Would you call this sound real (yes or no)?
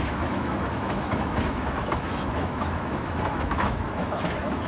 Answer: no